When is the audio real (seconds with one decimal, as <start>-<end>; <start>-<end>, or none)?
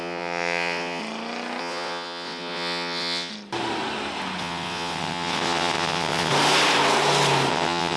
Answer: 1.0-1.6; 3.3-4.4; 6.3-7.5